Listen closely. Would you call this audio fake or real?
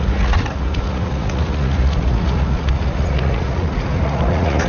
fake